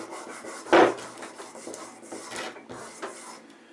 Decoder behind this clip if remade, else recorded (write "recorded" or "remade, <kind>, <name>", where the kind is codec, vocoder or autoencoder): recorded